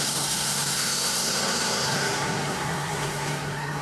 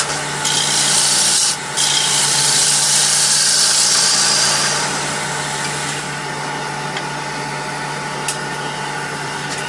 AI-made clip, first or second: first